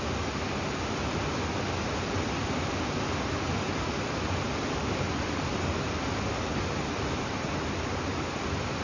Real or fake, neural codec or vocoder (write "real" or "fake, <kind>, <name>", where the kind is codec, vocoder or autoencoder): real